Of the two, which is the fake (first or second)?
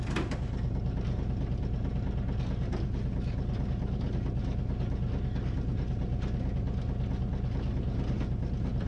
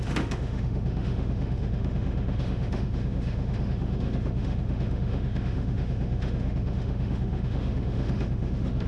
second